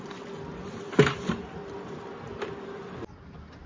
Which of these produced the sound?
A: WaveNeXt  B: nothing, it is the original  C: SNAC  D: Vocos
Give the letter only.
B